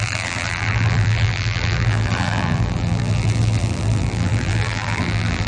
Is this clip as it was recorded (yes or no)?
no